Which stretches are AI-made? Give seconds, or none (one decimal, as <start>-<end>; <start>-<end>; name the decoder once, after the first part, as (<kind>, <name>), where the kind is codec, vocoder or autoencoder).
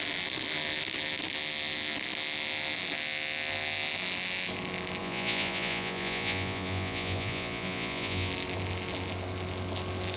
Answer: 5.0-8.3 (vocoder, Vocos)